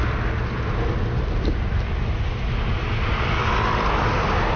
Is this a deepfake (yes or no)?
no